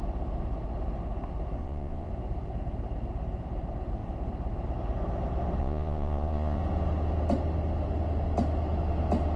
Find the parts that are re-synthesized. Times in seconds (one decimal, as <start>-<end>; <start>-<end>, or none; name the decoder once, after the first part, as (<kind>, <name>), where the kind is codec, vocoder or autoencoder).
1.6-2.1 (vocoder, Vocos); 5.6-6.6